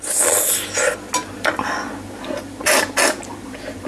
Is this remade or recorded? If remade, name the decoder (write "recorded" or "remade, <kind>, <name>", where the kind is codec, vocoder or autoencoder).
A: recorded